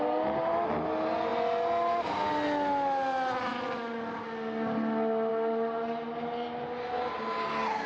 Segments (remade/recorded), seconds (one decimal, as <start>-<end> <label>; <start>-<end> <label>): 0.0-7.9 recorded

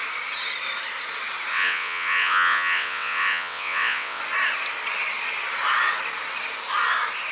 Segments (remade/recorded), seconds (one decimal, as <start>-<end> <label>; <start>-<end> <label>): 0.0-1.5 recorded; 1.5-4.2 remade; 4.2-7.3 recorded